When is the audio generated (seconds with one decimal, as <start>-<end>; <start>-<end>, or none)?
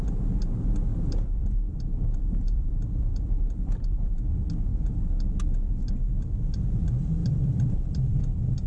0.9-4.2; 7.2-8.2